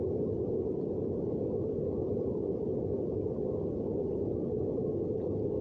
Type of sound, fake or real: fake